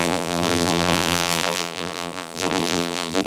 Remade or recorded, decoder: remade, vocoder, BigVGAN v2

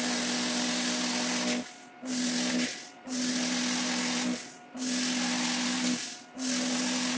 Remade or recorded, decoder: recorded